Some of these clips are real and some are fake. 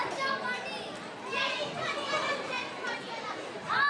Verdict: real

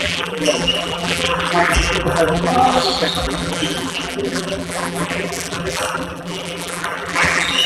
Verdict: fake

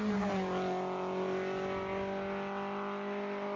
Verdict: real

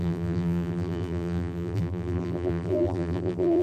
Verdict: fake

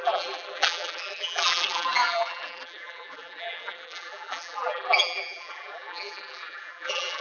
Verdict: fake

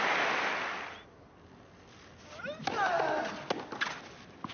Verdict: real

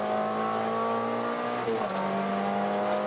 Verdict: real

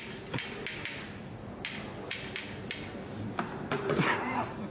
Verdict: real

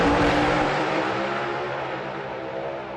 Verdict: fake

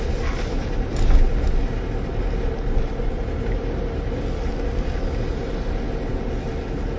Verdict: real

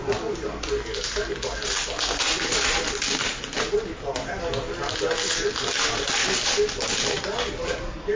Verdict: real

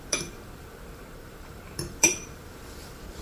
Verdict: fake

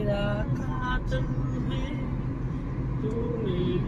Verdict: real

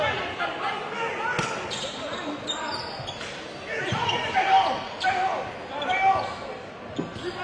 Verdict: real